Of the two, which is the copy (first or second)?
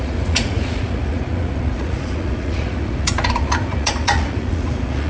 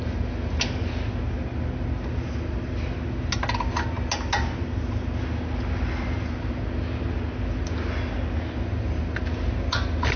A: first